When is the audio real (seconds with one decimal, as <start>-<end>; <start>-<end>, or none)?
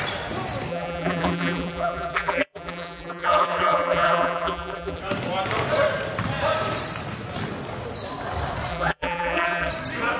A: 0.0-0.7; 5.0-8.7; 9.7-10.2